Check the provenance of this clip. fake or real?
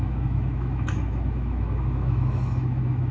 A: fake